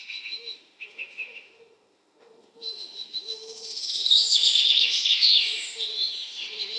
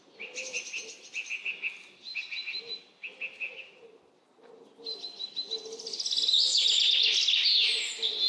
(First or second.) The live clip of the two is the second